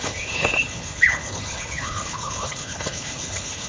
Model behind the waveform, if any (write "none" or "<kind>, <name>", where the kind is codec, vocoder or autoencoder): codec, HILCodec